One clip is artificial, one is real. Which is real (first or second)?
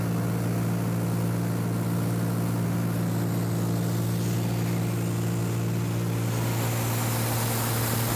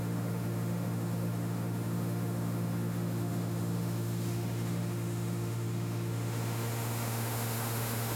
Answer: first